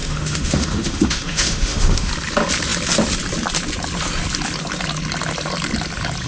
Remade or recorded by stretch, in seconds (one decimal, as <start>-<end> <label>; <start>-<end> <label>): 0.0-2.1 remade; 2.1-6.3 recorded